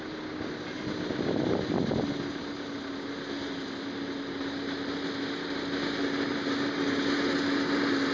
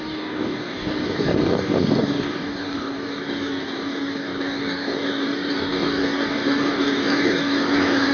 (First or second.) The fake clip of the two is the second